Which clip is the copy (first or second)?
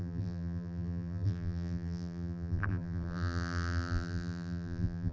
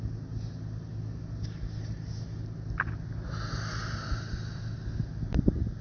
first